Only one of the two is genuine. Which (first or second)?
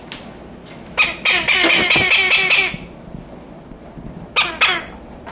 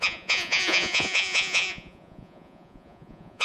first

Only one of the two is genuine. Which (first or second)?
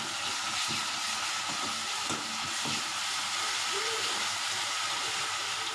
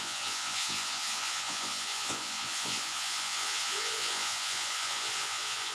first